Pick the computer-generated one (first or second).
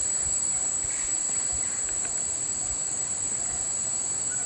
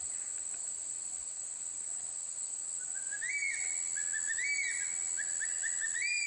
first